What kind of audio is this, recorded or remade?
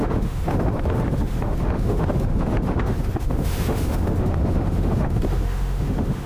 remade